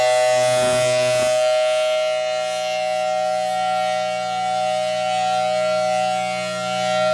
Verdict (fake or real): real